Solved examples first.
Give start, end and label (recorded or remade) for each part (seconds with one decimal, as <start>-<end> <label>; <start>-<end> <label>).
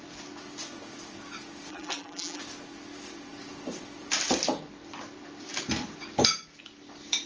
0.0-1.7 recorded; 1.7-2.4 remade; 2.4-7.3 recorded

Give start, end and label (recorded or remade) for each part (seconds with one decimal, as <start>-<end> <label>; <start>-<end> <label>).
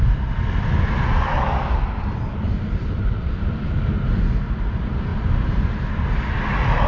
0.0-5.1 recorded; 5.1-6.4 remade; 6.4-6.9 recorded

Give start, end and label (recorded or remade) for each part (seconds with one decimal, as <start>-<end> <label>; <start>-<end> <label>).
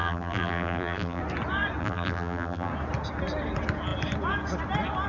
0.0-1.2 remade; 1.2-1.8 recorded; 1.8-2.7 remade; 2.7-5.1 recorded